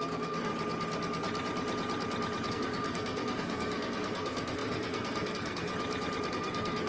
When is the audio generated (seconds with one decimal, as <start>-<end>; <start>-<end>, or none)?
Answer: 0.0-0.5; 2.5-5.7; 6.3-6.9